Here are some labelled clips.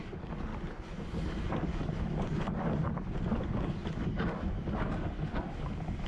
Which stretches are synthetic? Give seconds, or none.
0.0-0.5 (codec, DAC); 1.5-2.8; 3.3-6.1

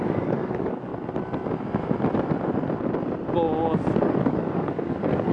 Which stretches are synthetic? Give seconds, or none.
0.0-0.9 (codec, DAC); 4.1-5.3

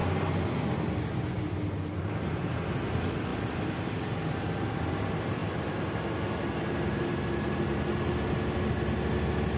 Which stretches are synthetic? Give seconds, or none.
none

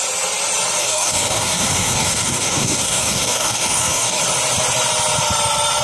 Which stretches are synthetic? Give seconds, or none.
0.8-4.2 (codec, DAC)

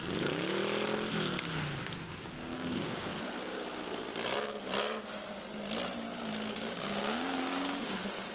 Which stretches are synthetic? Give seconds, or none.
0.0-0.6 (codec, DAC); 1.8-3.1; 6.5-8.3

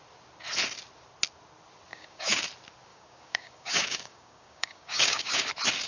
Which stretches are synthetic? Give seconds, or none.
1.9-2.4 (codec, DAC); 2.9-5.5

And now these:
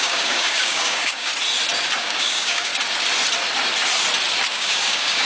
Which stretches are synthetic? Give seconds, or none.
0.0-1.3 (codec, DAC); 2.0-2.7; 4.5-5.2